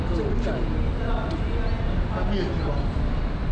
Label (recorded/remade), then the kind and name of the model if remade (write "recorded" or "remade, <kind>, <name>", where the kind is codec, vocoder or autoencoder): recorded